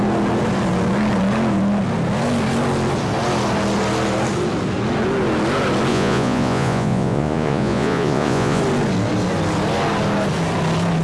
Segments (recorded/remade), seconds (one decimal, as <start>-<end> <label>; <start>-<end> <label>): 0.0-5.9 recorded; 5.9-8.6 remade; 8.6-11.0 recorded

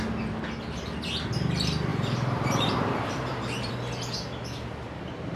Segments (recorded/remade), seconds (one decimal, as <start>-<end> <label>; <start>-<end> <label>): 0.0-1.9 recorded; 1.9-3.7 remade; 3.7-5.4 recorded